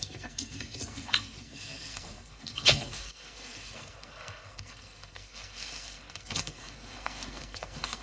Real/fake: fake